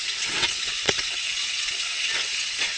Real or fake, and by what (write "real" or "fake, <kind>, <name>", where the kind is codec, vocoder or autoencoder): fake, vocoder, WaveNeXt